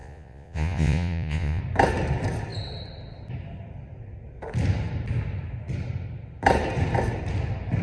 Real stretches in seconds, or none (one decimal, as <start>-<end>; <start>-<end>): 1.6-7.8